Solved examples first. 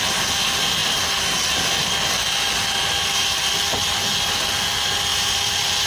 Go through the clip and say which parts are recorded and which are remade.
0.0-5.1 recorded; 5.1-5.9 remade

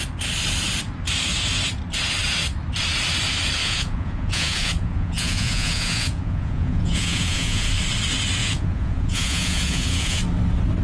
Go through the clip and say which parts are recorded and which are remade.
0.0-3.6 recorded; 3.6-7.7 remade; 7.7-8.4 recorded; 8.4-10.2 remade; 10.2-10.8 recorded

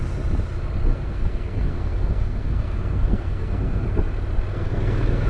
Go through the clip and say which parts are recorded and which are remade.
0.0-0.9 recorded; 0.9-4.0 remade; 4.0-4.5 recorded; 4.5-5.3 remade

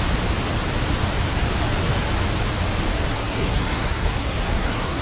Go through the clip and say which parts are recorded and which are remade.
0.0-3.1 recorded; 3.1-5.0 remade